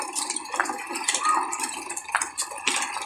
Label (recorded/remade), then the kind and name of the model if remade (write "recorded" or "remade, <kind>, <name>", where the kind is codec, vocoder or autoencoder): recorded